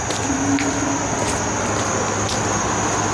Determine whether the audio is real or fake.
real